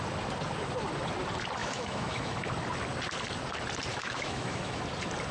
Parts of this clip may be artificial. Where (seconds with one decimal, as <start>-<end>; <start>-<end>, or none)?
1.6-2.4; 3.9-4.8